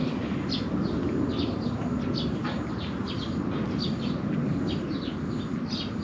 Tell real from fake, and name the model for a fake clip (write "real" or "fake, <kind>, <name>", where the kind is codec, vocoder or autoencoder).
real